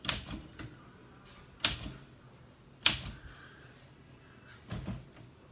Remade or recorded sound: recorded